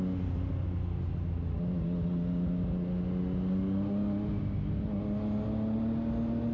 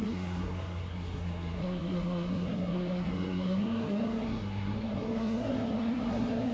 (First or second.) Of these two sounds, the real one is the first